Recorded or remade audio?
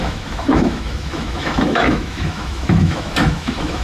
remade